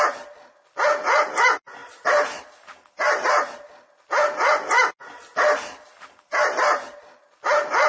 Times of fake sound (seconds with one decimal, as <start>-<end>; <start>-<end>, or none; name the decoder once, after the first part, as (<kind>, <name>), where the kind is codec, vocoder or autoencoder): 1.8-2.4 (vocoder, BigVGAN v2)